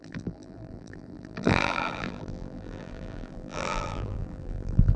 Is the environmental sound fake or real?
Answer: fake